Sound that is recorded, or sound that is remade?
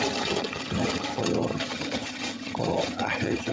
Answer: remade